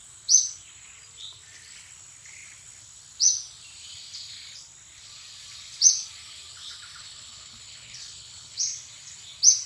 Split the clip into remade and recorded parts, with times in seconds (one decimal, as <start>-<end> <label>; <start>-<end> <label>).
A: 0.0-7.0 recorded; 7.0-8.6 remade; 8.6-9.7 recorded